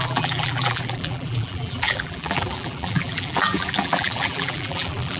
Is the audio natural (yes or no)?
no